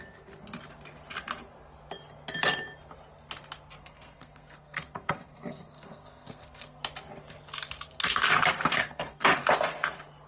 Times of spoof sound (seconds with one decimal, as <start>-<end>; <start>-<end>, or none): 3.8-6.8; 8.7-9.4